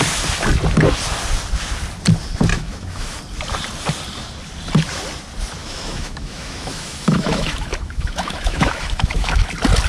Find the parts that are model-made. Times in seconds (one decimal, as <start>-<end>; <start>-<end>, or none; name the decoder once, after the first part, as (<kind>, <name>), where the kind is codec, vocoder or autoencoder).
2.5-3.2 (autoencoder, DAC-VAE); 5.6-9.5